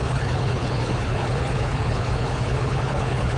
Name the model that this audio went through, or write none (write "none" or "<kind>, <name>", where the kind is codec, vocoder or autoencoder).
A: codec, HILCodec